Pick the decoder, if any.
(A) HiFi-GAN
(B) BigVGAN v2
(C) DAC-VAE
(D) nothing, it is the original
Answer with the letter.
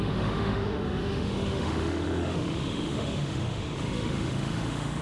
C